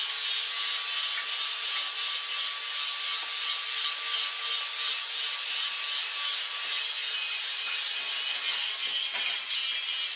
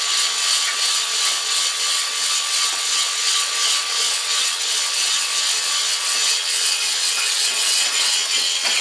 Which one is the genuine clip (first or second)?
first